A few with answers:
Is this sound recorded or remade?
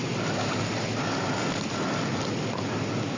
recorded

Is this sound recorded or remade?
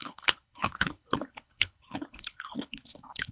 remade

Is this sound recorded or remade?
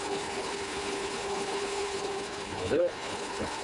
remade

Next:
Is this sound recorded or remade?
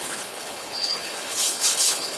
remade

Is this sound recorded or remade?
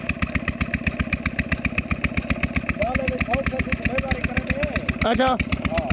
recorded